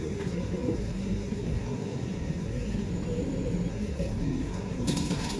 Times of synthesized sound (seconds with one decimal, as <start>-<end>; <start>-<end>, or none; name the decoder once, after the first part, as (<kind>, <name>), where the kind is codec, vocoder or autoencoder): 0.0-2.9 (codec, SNAC); 3.7-5.4